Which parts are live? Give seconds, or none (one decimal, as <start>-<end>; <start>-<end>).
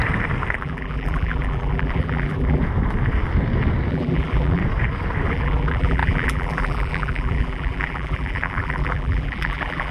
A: 0.0-0.6; 2.6-3.9; 4.6-5.3